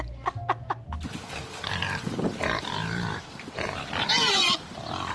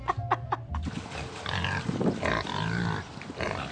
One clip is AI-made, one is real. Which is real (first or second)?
second